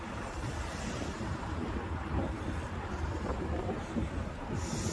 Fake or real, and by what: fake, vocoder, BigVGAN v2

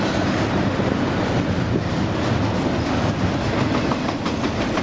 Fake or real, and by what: fake, vocoder, BigVGAN v2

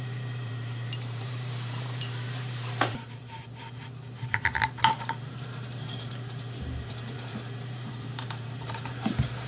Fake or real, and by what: fake, vocoder, BigVGAN v2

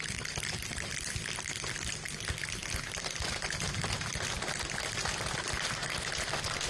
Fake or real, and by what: real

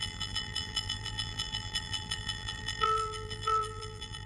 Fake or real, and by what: fake, vocoder, BigVGAN v2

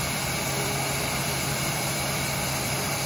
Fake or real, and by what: fake, vocoder, BigVGAN v2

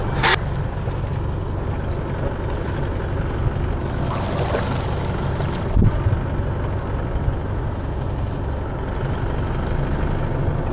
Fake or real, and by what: real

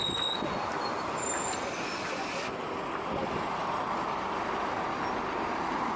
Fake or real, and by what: real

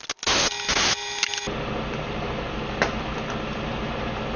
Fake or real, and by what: real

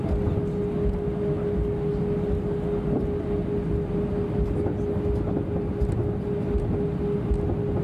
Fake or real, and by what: real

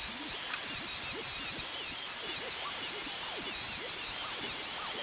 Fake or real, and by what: real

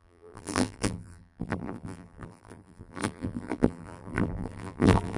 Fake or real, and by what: fake, vocoder, BigVGAN v2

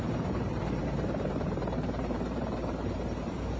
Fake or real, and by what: fake, vocoder, BigVGAN v2